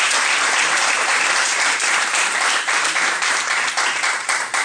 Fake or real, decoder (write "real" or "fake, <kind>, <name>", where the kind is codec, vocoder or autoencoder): fake, vocoder, BigVGAN v2